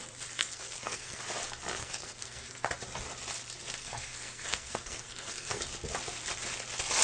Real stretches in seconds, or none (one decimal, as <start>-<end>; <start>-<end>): 0.0-0.4; 1.2-1.8; 2.7-3.8; 5.6-7.0